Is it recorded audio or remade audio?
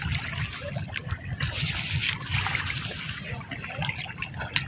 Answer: recorded